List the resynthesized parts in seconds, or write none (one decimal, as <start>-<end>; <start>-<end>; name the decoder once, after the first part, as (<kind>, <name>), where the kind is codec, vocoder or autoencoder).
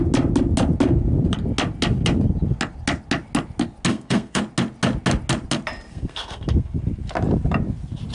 3.9-4.4 (codec, SNAC); 5.9-6.8